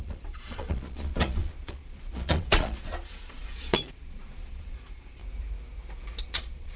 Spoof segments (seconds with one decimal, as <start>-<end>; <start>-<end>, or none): 0.0-5.2; 6.2-6.8